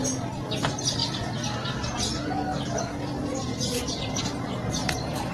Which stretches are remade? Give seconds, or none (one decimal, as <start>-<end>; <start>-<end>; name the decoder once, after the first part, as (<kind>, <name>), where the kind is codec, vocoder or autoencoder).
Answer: none